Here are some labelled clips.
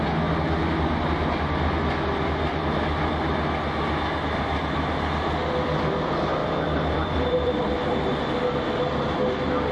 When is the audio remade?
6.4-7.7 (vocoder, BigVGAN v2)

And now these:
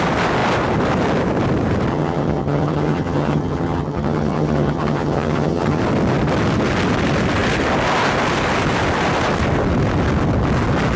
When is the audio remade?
1.9-5.8 (vocoder, HiFi-GAN)

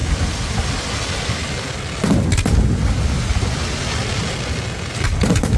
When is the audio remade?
none